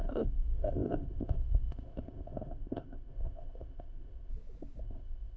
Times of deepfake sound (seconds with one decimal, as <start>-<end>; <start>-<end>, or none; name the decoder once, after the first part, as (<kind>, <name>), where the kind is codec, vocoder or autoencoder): 0.0-4.3 (codec, ZipCodec); 4.8-5.4

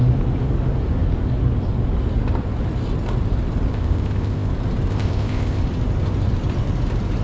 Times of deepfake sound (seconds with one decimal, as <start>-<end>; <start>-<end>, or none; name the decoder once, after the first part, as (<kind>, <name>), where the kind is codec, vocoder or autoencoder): 3.7-4.5 (codec, ZipCodec); 4.9-5.6

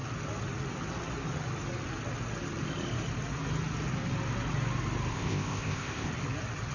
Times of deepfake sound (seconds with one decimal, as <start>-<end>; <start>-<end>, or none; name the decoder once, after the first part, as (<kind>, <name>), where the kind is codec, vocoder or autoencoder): 5.1-6.1 (codec, ZipCodec)

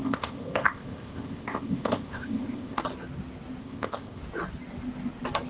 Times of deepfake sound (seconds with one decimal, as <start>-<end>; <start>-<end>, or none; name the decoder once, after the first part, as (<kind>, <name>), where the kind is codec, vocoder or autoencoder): 0.0-2.8 (codec, ZipCodec); 3.6-4.2